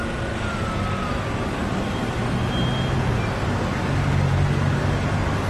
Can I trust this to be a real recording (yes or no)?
yes